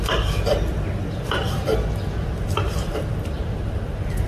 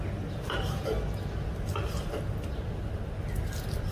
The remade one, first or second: first